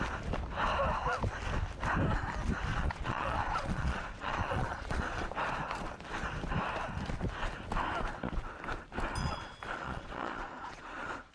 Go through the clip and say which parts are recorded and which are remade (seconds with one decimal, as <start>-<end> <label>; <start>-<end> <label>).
0.0-2.7 recorded; 2.7-5.3 remade; 5.3-9.2 recorded; 9.2-11.3 remade

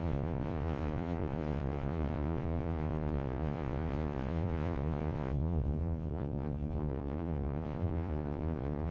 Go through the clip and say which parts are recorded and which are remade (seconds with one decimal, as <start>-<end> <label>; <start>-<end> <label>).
0.0-8.9 remade

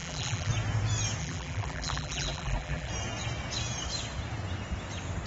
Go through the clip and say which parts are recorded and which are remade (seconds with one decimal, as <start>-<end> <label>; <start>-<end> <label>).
0.0-0.5 remade; 0.5-1.2 recorded; 1.2-2.9 remade; 2.9-5.3 recorded

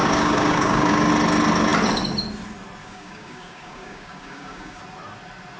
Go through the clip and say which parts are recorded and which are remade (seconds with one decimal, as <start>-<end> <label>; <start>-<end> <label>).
0.0-1.1 remade; 1.1-2.8 recorded; 2.8-4.8 remade; 4.8-5.6 recorded

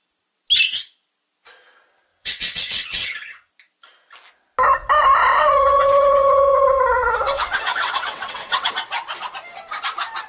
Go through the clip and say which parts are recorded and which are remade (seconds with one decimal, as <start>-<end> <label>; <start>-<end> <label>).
0.0-2.1 recorded; 2.1-3.5 remade; 3.5-5.3 recorded; 5.3-8.7 remade; 8.7-10.3 recorded

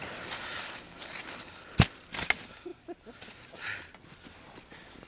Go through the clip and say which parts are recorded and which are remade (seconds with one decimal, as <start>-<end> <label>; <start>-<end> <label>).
0.0-5.1 recorded

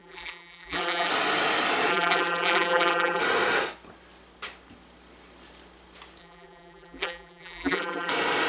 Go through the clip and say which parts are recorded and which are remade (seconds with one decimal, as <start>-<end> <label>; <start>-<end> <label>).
0.0-1.1 remade; 1.1-1.9 recorded; 1.9-3.2 remade; 3.2-6.2 recorded; 6.2-8.1 remade; 8.1-8.5 recorded

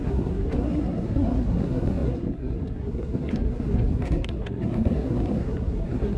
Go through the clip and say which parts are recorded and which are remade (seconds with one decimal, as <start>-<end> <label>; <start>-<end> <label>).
0.0-6.2 remade